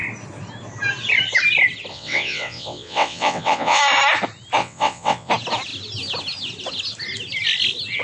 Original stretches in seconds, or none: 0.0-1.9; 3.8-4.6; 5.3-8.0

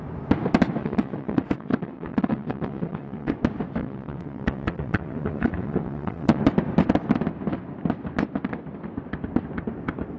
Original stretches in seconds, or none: 0.0-0.8; 3.3-3.8; 6.4-10.2

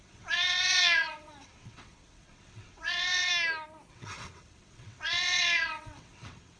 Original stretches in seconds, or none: 3.3-3.9

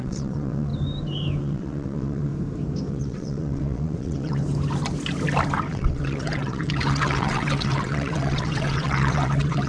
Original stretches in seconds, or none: 0.7-1.4; 2.3-2.9; 4.4-5.7

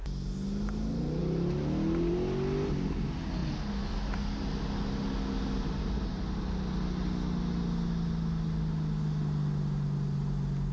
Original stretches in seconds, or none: 0.0-10.7

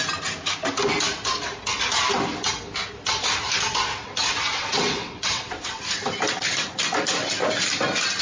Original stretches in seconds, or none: 0.0-4.5; 5.8-8.2

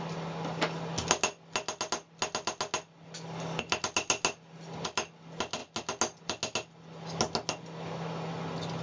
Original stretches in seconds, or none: 0.0-8.8